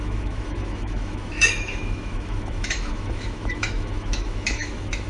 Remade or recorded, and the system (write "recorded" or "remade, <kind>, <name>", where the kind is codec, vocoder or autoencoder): remade, autoencoder, DAC-VAE